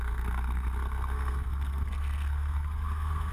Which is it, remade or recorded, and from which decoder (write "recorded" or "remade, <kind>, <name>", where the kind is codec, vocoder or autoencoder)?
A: remade, codec, SNAC